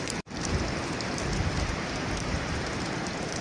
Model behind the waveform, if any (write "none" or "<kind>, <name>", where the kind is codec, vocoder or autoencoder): vocoder, BigVGAN v2